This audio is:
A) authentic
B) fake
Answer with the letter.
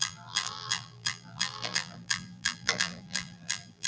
B